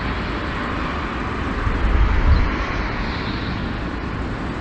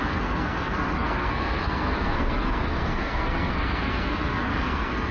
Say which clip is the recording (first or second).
first